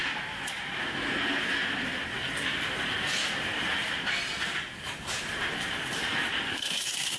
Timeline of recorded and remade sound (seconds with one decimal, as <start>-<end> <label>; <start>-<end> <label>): 0.0-6.5 recorded; 6.5-7.2 remade